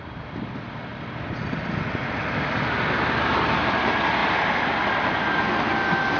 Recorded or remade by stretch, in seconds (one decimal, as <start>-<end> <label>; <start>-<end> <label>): 0.0-6.2 recorded